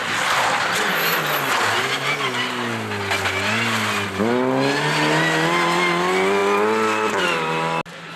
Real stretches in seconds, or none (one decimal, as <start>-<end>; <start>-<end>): 0.0-8.2

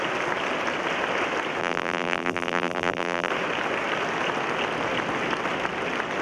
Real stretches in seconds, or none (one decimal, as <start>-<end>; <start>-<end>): 0.0-1.6; 3.3-6.2

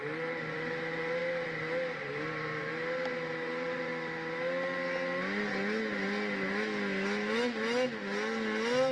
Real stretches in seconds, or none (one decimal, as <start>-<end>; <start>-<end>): 3.9-8.9

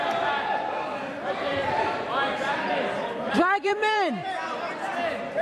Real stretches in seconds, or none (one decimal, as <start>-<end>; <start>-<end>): none

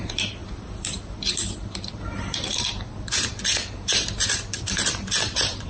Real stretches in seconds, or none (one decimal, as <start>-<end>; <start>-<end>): 0.4-1.2

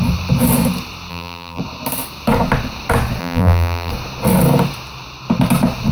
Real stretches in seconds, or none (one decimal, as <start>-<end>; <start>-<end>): 0.0-1.1; 1.6-3.2; 3.9-5.9

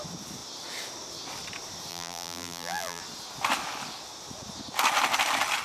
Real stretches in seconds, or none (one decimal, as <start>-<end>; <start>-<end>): 0.0-1.9; 3.0-5.6